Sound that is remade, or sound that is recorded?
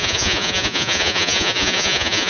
remade